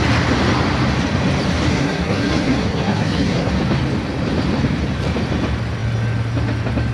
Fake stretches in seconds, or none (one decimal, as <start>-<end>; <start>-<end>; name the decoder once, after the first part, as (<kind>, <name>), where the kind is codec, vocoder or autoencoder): 1.7-3.5 (codec, SNAC)